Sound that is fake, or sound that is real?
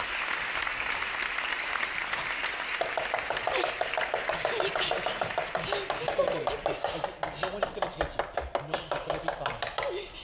real